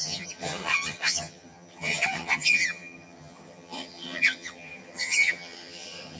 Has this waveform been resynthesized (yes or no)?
yes